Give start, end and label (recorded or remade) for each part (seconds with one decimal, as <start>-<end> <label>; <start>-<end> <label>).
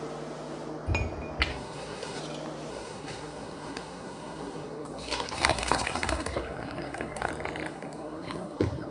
0.0-1.5 recorded; 1.5-2.2 remade; 2.2-2.7 recorded; 2.7-7.3 remade; 7.3-7.7 recorded; 7.7-8.9 remade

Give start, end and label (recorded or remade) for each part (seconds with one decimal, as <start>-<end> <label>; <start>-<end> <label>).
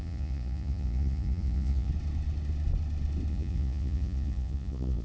0.0-1.9 remade; 1.9-3.3 recorded; 3.3-5.0 remade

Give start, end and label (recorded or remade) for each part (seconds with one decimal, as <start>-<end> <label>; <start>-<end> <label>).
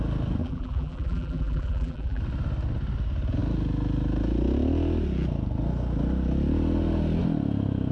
0.0-0.4 recorded; 0.4-2.2 remade; 2.2-7.9 recorded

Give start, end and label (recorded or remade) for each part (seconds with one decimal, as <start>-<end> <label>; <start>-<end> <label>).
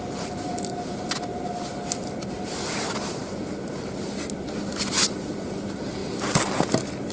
0.0-7.1 recorded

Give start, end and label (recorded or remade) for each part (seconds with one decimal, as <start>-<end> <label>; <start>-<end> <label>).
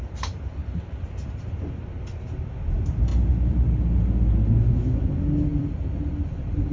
0.0-0.6 recorded; 0.6-1.7 remade; 1.7-5.5 recorded; 5.5-6.7 remade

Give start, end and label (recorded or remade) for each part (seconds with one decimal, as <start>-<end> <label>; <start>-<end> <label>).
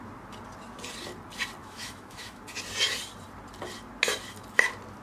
0.0-1.6 recorded; 1.6-2.4 remade; 2.4-5.0 recorded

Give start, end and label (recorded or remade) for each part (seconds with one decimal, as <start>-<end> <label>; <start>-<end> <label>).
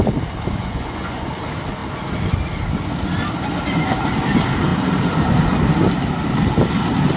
0.0-0.6 recorded; 0.6-1.3 remade; 1.3-7.2 recorded